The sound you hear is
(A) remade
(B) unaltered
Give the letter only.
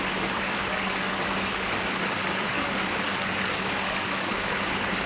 A